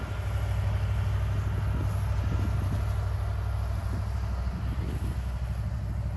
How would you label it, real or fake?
real